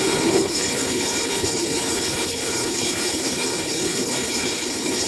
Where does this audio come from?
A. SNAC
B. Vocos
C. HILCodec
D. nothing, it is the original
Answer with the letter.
C